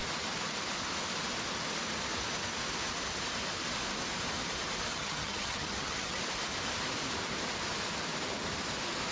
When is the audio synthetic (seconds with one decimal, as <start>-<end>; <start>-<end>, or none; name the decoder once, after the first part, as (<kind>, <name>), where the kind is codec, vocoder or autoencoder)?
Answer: 4.9-6.2 (vocoder, HiFi-GAN)